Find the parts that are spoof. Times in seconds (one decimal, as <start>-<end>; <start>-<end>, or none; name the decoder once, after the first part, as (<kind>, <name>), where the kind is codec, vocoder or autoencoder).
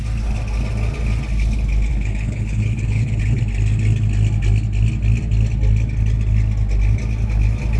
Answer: 1.9-3.4 (codec, HILCodec)